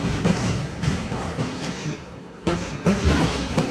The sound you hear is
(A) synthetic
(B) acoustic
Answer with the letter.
A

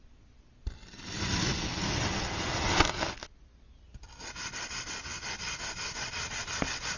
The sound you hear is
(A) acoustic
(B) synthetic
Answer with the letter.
A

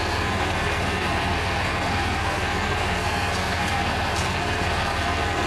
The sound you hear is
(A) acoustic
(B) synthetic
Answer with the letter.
B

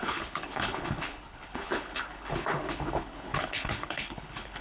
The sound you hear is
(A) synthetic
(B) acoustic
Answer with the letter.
A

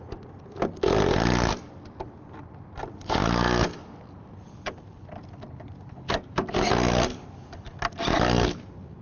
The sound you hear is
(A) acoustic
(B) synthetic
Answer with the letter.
A